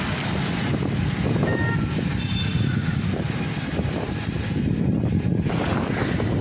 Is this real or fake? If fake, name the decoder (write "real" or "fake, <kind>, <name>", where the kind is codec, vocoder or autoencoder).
real